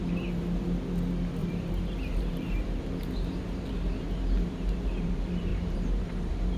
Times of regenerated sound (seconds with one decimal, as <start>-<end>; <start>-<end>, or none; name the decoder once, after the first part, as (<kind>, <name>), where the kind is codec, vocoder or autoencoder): 1.4-5.1 (vocoder, BigVGAN v2); 5.5-6.6